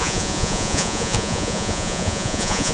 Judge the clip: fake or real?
fake